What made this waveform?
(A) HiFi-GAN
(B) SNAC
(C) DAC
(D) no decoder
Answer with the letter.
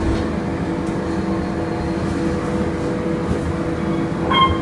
D